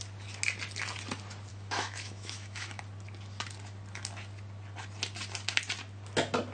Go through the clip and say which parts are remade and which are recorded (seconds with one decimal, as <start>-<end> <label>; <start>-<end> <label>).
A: 0.0-1.5 recorded; 1.5-2.8 remade; 2.8-6.5 recorded